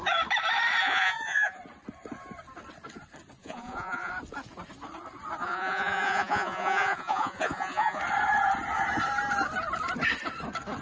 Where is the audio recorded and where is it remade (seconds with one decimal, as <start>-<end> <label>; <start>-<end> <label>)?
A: 0.0-0.8 recorded; 0.8-1.6 remade; 1.6-3.4 recorded; 3.4-4.1 remade; 4.1-5.4 recorded; 5.4-8.0 remade; 8.0-10.8 recorded